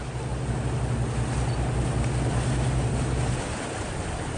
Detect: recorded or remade recorded